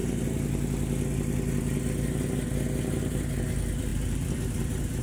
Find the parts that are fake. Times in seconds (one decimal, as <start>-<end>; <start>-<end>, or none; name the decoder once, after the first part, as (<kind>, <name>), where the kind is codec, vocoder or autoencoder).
3.9-5.0 (vocoder, BigVGAN v2)